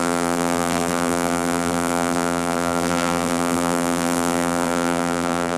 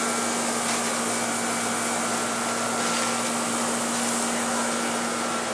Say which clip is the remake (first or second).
first